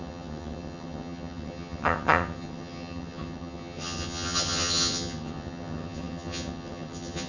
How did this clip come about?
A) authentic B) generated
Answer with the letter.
B